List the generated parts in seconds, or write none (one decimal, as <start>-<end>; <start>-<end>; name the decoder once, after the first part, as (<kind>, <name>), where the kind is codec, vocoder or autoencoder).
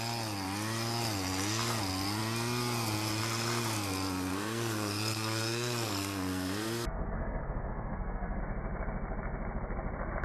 4.3-8.4 (codec, SNAC)